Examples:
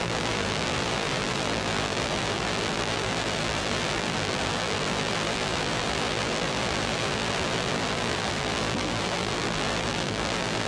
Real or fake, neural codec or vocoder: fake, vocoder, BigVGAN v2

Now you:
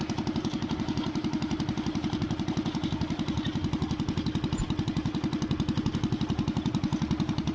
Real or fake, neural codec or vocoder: real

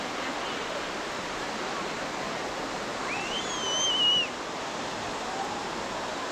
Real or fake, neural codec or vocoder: real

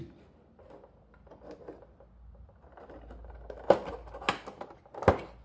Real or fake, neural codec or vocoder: real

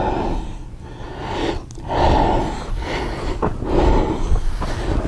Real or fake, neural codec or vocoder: real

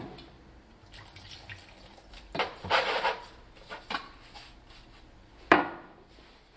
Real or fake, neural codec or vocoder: real